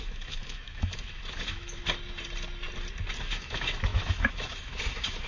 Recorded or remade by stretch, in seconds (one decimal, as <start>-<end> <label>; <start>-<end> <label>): 0.0-1.8 remade; 1.8-3.2 recorded; 3.2-5.3 remade